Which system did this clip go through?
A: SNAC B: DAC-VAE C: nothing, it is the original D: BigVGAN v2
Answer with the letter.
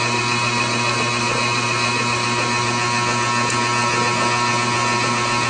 C